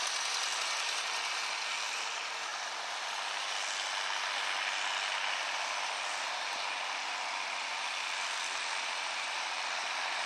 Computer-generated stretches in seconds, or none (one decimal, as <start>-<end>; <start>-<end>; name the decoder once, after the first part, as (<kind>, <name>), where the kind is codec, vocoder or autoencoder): 0.0-2.5 (vocoder, BigVGAN v2); 7.6-10.3